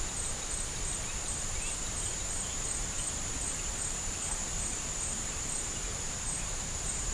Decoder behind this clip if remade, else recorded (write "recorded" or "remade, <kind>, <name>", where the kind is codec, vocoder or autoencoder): remade, vocoder, BigVGAN v2